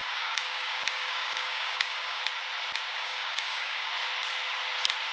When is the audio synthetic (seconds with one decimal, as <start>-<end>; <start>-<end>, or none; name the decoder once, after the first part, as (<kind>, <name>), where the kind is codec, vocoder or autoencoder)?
0.0-2.2 (codec, DAC); 2.9-3.9